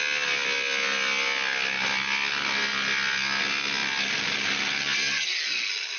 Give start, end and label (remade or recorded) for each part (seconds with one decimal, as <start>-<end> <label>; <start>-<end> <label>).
0.0-6.0 recorded